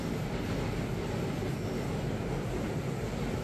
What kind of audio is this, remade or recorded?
recorded